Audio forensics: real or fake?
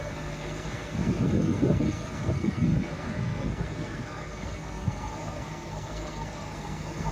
fake